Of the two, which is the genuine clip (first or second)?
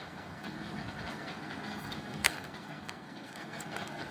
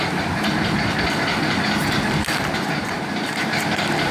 second